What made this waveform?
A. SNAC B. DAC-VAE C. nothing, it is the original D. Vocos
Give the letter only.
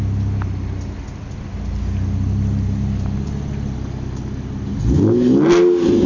C